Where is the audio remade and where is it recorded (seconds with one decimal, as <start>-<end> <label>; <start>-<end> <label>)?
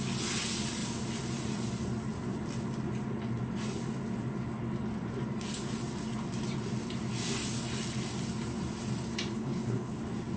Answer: 0.0-9.3 recorded; 9.3-10.0 remade; 10.0-10.4 recorded